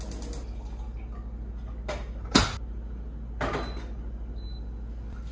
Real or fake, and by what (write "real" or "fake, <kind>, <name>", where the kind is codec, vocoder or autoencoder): real